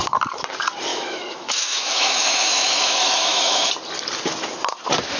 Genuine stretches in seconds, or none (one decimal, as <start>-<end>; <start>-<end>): 0.0-0.9; 3.7-5.2